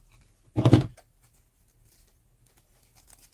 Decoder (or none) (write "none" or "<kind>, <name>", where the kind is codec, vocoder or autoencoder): none